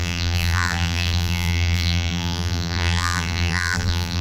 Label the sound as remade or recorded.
remade